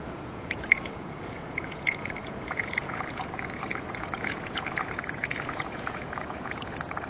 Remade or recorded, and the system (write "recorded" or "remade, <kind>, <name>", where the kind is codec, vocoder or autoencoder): remade, vocoder, Vocos